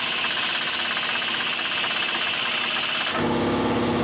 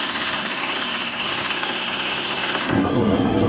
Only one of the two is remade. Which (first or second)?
second